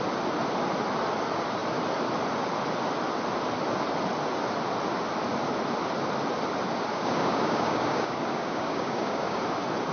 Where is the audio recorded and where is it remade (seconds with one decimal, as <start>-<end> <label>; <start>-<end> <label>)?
0.0-6.9 recorded; 6.9-9.4 remade; 9.4-9.9 recorded